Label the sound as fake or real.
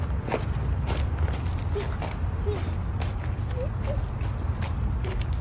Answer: real